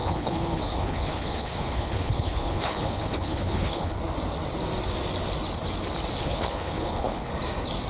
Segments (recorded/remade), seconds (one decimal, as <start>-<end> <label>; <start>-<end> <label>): 0.0-4.0 remade; 4.0-6.2 recorded; 6.2-7.3 remade; 7.3-7.9 recorded